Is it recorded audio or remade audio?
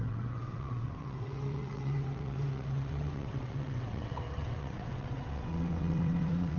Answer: remade